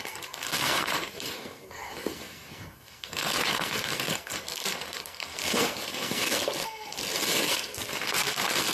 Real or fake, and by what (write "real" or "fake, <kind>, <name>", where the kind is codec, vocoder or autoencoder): fake, codec, SNAC